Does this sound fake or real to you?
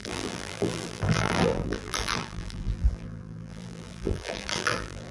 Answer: fake